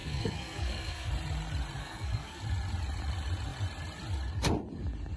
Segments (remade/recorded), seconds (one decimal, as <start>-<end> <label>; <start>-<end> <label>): 0.0-1.1 remade; 1.1-1.8 recorded; 1.8-2.4 remade; 2.4-5.2 recorded

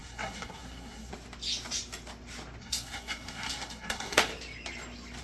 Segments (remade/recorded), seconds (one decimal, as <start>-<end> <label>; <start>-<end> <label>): 0.0-1.1 remade; 1.1-2.6 recorded; 2.6-4.3 remade; 4.3-5.2 recorded